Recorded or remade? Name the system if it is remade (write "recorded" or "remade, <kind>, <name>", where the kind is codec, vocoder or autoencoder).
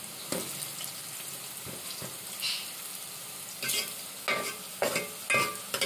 recorded